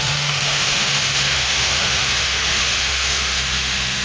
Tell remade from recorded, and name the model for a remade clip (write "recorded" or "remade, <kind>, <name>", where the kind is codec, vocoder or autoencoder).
remade, autoencoder, DAC-VAE